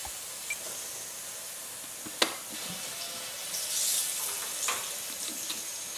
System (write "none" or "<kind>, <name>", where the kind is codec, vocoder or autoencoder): none